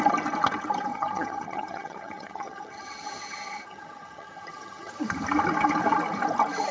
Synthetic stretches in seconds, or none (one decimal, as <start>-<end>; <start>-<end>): 0.9-4.9